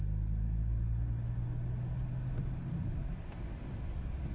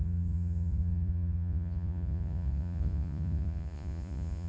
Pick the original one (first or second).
first